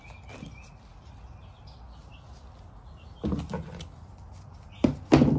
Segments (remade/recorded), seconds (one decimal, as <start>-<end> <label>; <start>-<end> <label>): 0.0-5.4 recorded